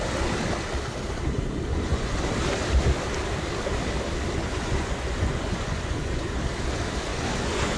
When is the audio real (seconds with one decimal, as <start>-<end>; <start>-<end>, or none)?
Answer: 0.0-1.7; 2.2-4.4; 6.4-7.1